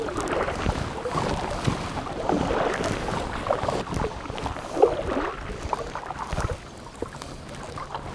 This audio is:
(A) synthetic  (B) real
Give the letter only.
B